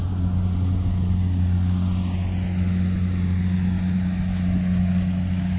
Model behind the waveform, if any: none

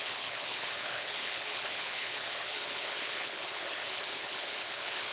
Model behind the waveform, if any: codec, HILCodec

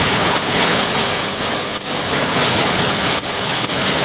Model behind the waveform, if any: codec, HILCodec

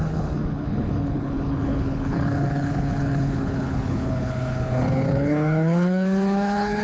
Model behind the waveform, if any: codec, HILCodec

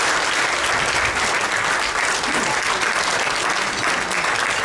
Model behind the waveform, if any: none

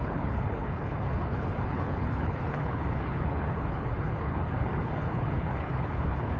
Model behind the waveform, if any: codec, HILCodec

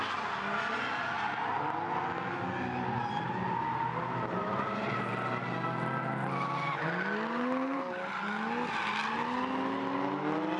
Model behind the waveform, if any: none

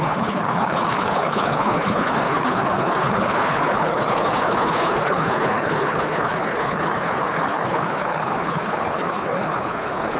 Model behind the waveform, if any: codec, HILCodec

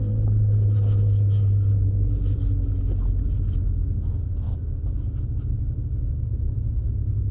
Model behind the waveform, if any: none